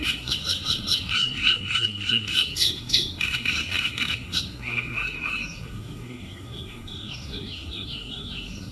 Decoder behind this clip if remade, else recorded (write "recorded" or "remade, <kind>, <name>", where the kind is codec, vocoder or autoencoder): remade, codec, SNAC